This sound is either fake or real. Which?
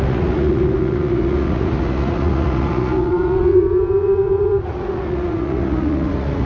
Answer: fake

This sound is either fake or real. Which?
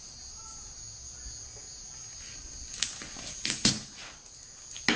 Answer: real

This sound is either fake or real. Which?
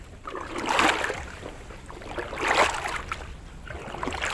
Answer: real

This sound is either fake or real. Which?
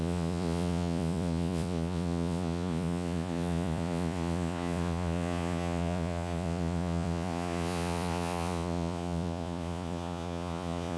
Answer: fake